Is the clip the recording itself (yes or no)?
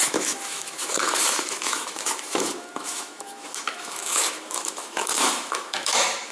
no